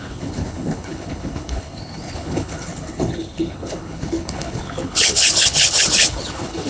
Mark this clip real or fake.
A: fake